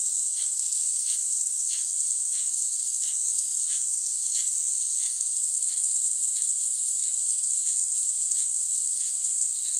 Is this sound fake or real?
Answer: fake